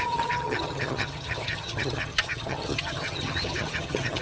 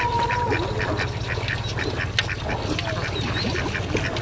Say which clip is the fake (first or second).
first